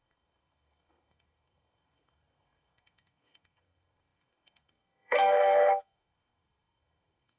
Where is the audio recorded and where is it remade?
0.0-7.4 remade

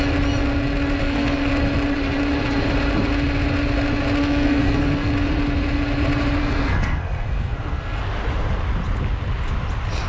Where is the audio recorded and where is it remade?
0.0-1.0 recorded; 1.0-1.5 remade; 1.5-4.2 recorded; 4.2-5.1 remade; 5.1-6.4 recorded; 6.4-8.0 remade; 8.0-10.1 recorded

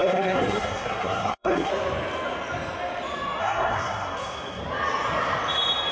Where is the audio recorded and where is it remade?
0.0-1.7 remade; 1.7-3.4 recorded; 3.4-4.6 remade; 4.6-5.9 recorded